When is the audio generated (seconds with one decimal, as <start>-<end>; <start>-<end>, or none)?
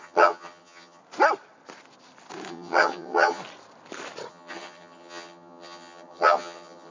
0.0-1.0; 2.5-3.4; 4.3-6.9